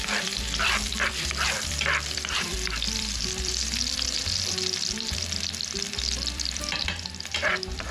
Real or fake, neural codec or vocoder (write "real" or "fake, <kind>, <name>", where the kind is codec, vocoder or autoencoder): fake, vocoder, BigVGAN v2